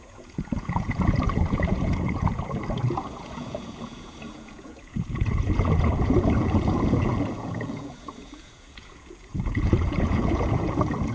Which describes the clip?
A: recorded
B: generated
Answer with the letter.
B